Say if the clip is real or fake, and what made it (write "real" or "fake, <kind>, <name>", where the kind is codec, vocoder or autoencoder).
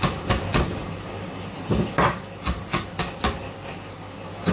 real